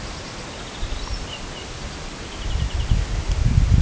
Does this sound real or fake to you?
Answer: real